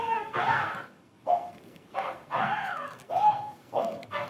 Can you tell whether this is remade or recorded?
remade